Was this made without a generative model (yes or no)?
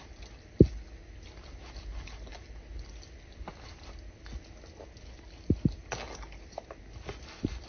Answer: yes